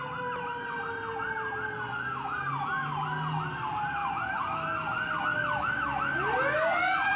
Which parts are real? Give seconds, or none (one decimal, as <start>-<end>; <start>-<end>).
0.0-7.2